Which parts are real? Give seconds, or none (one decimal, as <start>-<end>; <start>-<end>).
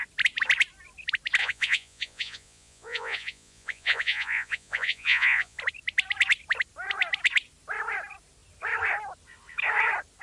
0.0-1.4; 5.6-10.2